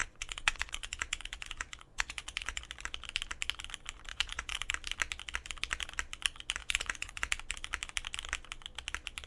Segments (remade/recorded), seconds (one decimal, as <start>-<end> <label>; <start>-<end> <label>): 0.0-2.6 remade; 2.6-4.1 recorded; 4.1-4.7 remade; 4.7-6.6 recorded; 6.6-7.3 remade; 7.3-9.3 recorded

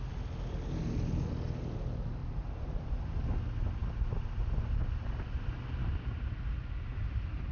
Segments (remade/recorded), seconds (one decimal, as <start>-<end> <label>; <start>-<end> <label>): 0.0-2.2 recorded; 2.2-3.0 remade; 3.0-7.5 recorded

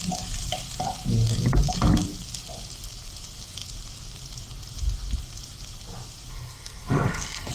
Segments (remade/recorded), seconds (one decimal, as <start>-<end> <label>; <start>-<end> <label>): 0.0-6.3 recorded; 6.3-7.5 remade